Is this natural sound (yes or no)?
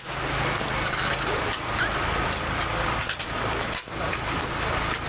no